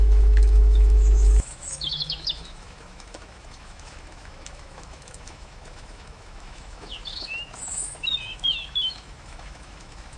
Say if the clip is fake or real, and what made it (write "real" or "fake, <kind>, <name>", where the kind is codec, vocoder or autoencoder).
fake, autoencoder, DAC-VAE